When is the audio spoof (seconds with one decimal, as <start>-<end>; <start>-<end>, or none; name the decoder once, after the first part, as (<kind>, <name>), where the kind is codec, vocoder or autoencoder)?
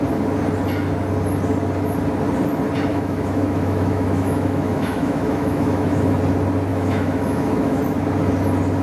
2.9-6.2 (autoencoder, DAC-VAE); 6.7-7.8